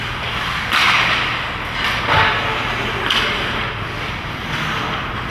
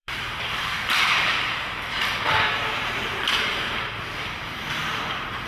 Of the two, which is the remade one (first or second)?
second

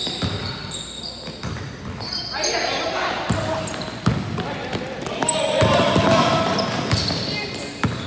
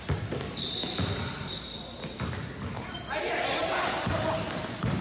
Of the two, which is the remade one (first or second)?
second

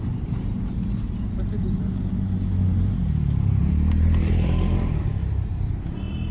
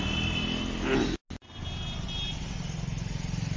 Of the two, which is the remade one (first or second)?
first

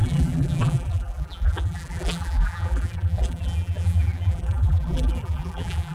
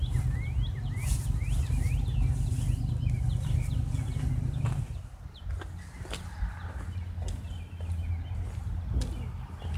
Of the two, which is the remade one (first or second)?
first